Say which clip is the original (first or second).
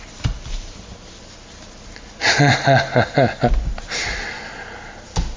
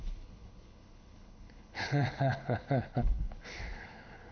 first